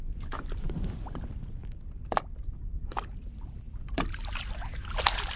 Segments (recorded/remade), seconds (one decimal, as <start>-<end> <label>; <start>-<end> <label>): 0.0-5.4 recorded